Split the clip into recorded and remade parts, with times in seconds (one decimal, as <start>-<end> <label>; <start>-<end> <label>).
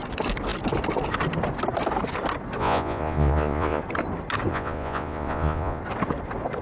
0.0-2.6 recorded; 2.6-3.8 remade; 3.8-4.5 recorded; 4.5-5.8 remade; 5.8-6.6 recorded